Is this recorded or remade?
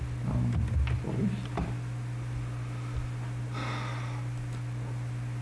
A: recorded